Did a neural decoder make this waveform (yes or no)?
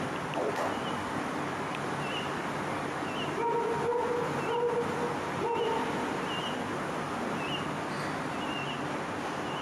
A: no